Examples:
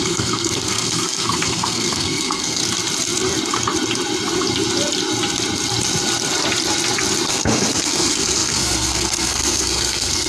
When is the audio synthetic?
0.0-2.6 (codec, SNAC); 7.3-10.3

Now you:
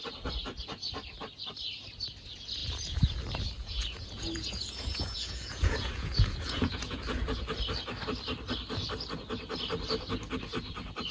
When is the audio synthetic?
2.6-3.2 (vocoder, Vocos); 3.6-7.0

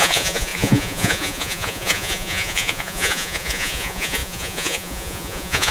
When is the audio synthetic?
0.0-5.7 (vocoder, Vocos)

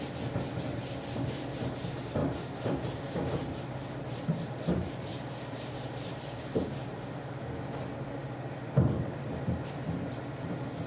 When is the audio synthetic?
2.2-7.4 (vocoder, BigVGAN v2); 8.2-10.9

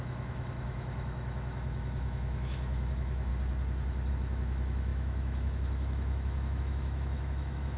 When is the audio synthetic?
0.0-3.3 (autoencoder, DAC-VAE); 4.1-7.8

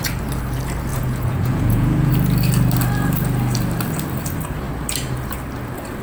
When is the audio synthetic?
0.9-2.1 (vocoder, Vocos)